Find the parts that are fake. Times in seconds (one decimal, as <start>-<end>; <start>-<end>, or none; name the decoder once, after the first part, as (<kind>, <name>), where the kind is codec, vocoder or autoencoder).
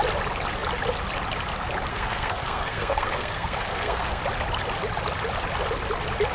1.9-4.2 (codec, SNAC)